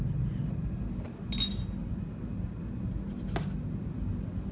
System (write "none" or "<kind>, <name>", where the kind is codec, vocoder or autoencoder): none